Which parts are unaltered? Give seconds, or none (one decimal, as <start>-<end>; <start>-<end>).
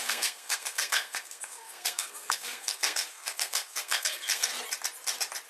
4.5-5.5